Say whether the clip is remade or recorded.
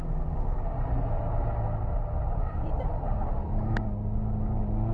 recorded